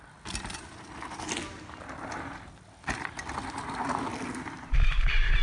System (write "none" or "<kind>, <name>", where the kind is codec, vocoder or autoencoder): none